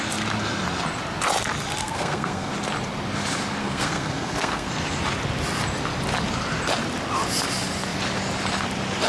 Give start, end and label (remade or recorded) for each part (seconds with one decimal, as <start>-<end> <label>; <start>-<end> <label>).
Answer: 0.0-1.8 recorded; 1.8-2.5 remade; 2.5-3.6 recorded; 3.6-4.7 remade; 4.7-9.1 recorded